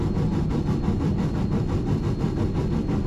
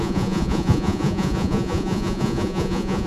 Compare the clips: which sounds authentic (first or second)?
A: first